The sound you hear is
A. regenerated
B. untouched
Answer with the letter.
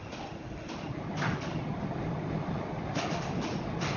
B